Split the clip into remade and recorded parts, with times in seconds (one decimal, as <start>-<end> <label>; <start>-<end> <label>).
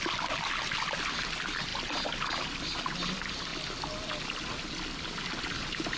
0.0-6.0 recorded